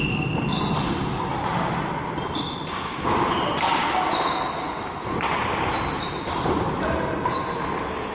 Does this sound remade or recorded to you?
recorded